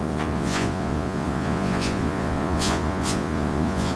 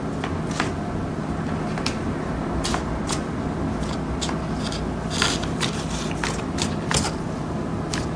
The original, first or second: second